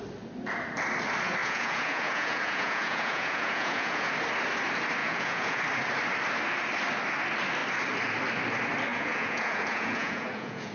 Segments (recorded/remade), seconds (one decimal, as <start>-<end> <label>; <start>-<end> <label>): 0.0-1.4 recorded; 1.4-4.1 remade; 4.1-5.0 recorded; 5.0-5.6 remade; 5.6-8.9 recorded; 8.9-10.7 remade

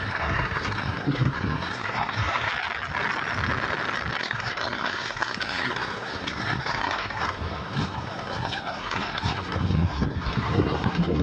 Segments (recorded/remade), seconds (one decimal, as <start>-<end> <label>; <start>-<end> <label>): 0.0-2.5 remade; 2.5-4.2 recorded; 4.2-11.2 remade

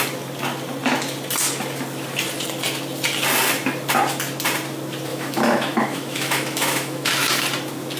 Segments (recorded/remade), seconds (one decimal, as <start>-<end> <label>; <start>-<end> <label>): 0.0-5.1 recorded; 5.1-7.1 remade; 7.1-8.0 recorded

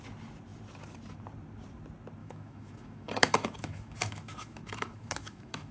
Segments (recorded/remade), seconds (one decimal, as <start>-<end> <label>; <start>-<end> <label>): 0.0-2.2 recorded; 2.2-5.7 remade

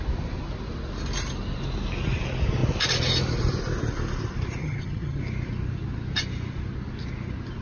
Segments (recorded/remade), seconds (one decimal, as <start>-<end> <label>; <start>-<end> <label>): 0.0-4.6 recorded; 4.6-5.2 remade; 5.2-7.6 recorded